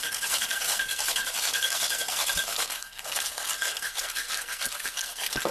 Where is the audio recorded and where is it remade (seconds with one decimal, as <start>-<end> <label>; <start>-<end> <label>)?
0.0-5.5 remade